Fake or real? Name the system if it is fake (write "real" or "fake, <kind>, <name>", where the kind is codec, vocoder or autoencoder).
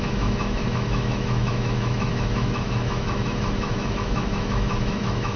fake, autoencoder, DAC-VAE